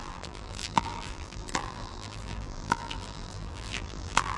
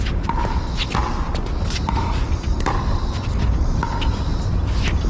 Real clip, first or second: second